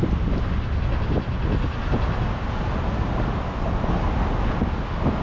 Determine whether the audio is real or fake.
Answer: real